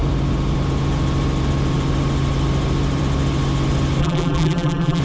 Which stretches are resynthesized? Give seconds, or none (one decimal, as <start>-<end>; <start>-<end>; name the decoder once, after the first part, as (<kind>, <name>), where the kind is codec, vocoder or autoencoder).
4.0-5.0 (vocoder, BigVGAN v2)

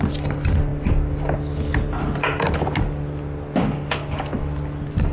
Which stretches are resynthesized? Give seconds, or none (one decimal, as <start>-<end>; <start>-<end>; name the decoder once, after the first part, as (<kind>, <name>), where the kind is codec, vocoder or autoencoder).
none